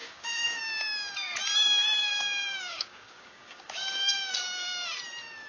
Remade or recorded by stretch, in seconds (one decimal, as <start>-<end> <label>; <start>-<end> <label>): 0.0-0.6 remade; 0.6-2.0 recorded; 2.0-4.3 remade; 4.3-5.5 recorded